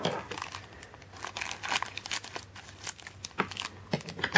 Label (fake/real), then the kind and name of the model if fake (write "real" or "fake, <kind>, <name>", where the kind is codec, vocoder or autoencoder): real